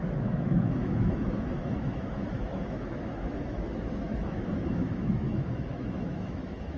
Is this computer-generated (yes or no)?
yes